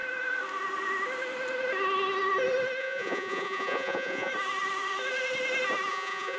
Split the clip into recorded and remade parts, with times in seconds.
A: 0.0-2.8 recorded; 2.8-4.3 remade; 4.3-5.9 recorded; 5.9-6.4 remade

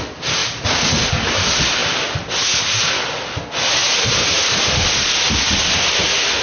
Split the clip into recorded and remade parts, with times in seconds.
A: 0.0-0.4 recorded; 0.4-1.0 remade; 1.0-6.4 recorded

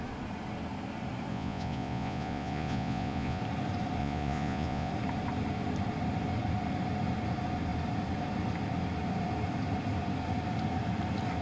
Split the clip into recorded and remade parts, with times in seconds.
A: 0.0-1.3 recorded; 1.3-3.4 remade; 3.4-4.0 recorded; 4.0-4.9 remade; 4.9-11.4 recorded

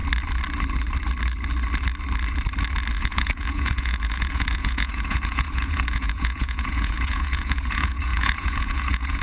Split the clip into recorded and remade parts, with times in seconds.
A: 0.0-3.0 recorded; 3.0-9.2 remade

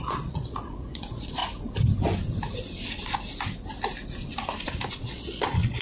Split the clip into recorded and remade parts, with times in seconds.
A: 0.0-1.4 remade; 1.4-4.9 recorded; 4.9-5.8 remade